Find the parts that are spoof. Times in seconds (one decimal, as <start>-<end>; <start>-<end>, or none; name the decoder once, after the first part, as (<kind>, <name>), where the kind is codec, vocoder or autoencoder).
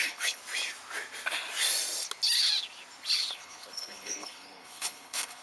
0.0-0.4 (codec, HILCodec); 3.3-5.4